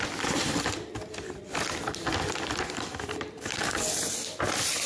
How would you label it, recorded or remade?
recorded